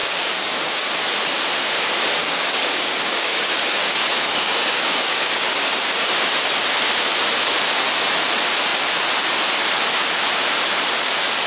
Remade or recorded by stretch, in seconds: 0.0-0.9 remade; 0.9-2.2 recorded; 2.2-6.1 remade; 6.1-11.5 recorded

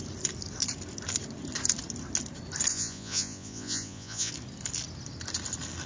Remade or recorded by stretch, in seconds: 0.0-2.7 recorded; 2.7-4.3 remade; 4.3-5.9 recorded